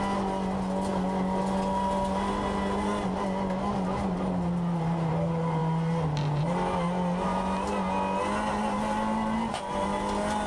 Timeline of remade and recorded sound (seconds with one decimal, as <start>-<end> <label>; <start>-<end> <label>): 0.0-10.5 recorded